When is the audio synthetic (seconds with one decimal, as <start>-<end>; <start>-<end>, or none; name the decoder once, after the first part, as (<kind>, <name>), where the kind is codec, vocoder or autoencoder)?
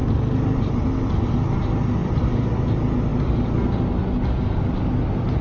2.0-2.5 (vocoder, BigVGAN v2)